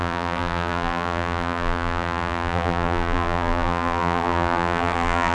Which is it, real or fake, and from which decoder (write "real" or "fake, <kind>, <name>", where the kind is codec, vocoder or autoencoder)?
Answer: fake, vocoder, BigVGAN v2